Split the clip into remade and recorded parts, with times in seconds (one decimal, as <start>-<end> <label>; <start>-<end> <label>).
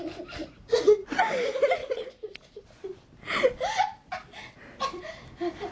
0.0-0.4 recorded; 0.4-1.2 remade; 1.2-1.8 recorded; 1.8-2.6 remade; 2.6-5.7 recorded